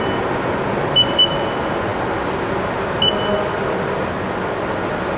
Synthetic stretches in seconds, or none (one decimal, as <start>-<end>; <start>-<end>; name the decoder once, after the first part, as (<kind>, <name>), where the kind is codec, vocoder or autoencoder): none